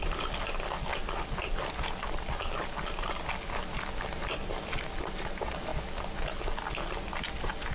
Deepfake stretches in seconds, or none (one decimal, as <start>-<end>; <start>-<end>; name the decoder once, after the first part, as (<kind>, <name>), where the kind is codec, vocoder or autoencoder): none